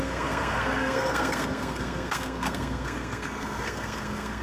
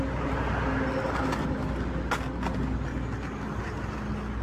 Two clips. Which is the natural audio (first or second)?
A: second